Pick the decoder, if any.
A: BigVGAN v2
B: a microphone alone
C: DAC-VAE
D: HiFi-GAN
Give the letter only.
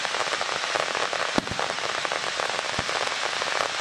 B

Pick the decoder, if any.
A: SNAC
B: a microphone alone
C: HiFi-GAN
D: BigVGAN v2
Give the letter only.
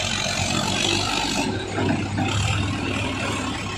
B